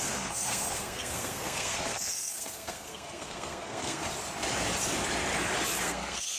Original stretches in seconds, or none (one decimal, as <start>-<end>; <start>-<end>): 4.0-5.8